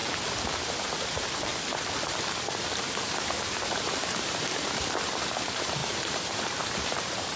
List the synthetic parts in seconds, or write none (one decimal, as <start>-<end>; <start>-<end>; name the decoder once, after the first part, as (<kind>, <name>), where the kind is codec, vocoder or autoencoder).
0.7-1.5 (vocoder, BigVGAN v2); 2.9-7.4